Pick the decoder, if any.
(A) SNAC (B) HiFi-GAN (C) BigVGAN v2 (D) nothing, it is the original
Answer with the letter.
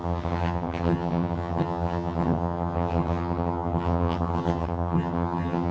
B